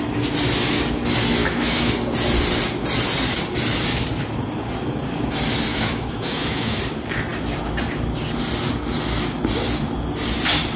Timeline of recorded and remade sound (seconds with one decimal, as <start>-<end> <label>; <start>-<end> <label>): 0.0-1.4 recorded; 1.4-1.9 remade; 1.9-5.7 recorded; 5.7-6.8 remade; 6.8-10.8 recorded